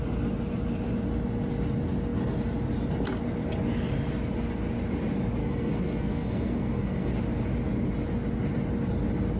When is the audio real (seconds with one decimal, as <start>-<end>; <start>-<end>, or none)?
0.0-5.4; 7.1-9.4